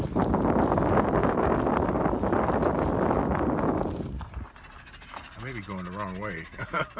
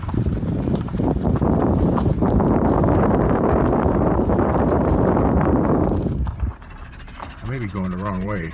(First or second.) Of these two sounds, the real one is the first